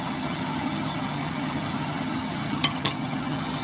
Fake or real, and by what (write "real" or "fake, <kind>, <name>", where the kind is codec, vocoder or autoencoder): fake, vocoder, HiFi-GAN